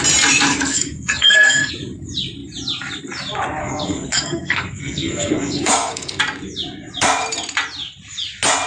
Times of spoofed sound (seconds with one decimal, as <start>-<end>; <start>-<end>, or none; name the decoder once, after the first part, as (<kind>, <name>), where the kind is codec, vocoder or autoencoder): 0.5-1.7 (codec, SNAC); 3.6-6.2